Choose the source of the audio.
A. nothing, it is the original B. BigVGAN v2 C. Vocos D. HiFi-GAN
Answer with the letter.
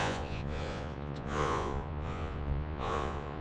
C